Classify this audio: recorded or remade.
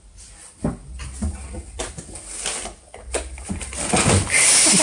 recorded